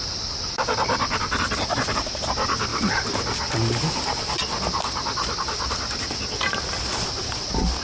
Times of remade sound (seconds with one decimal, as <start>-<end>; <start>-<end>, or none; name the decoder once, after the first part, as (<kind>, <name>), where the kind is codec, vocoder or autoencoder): none